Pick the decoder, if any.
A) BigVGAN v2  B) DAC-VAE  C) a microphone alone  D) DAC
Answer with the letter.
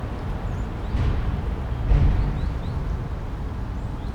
C